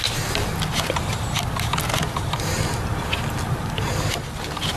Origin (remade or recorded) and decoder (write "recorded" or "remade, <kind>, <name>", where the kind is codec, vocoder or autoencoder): recorded